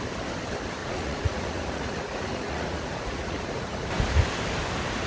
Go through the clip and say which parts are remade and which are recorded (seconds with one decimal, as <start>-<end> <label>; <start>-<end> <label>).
0.0-0.8 recorded; 0.8-3.9 remade; 3.9-5.1 recorded